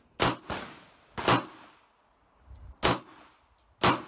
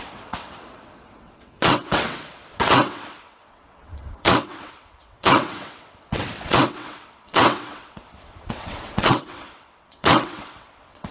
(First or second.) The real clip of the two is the first